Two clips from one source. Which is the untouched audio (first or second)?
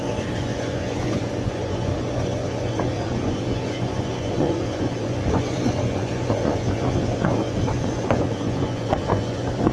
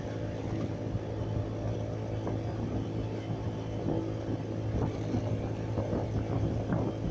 second